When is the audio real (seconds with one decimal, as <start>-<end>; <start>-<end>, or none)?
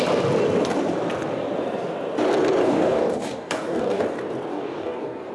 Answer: 0.0-2.6; 4.0-4.5